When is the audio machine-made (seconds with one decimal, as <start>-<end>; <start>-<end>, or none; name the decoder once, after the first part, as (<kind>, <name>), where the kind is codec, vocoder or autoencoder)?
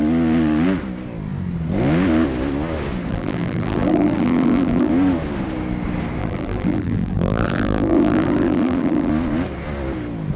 3.1-4.9 (vocoder, BigVGAN v2); 6.2-9.1